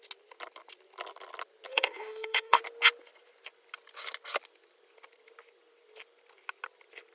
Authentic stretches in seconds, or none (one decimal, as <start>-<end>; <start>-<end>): 0.0-1.7; 2.6-7.1